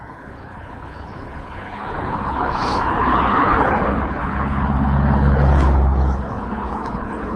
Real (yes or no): no